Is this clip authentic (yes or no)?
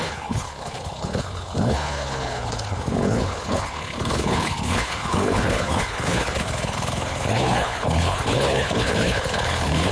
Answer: no